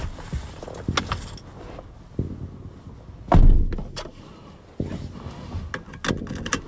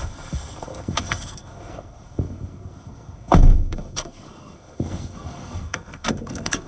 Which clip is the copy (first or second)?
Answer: second